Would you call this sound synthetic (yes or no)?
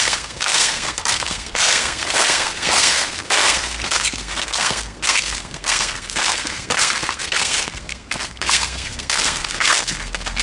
yes